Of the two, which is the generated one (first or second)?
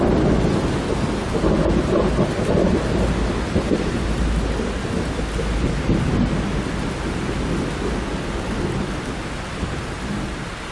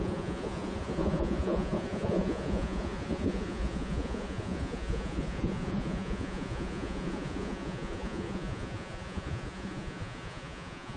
second